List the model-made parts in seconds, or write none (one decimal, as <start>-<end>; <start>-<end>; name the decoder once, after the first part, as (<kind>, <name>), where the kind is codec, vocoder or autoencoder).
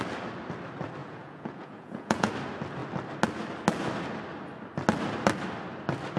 1.0-2.3 (vocoder, Vocos)